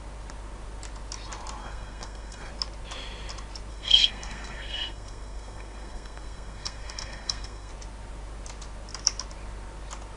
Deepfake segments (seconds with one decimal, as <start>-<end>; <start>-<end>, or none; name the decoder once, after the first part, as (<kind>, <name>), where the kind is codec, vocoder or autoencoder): 1.6-2.5 (codec, SNAC); 3.7-7.7